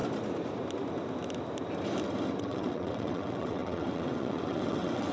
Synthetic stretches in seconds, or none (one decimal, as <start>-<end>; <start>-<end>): 2.4-5.1